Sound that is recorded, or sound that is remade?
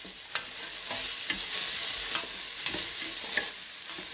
recorded